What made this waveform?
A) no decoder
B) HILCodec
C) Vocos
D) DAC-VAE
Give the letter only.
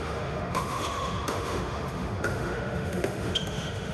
D